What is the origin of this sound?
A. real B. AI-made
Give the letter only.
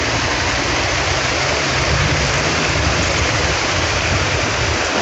A